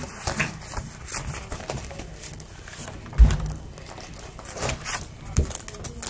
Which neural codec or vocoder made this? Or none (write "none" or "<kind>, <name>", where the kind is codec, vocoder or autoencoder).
none